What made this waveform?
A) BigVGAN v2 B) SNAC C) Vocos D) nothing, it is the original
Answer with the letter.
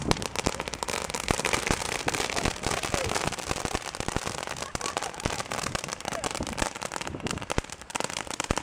A